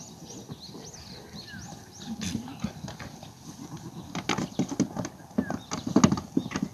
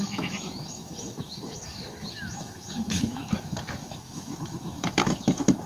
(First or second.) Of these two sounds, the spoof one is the second